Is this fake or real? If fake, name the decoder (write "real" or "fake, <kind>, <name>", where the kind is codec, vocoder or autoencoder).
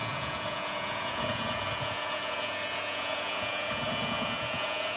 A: fake, vocoder, Vocos